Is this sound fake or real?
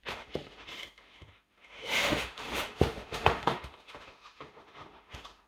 fake